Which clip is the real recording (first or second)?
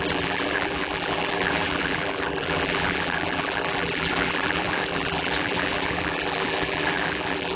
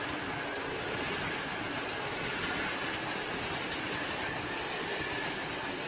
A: second